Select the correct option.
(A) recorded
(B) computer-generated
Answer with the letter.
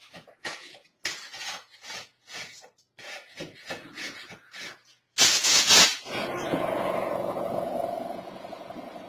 B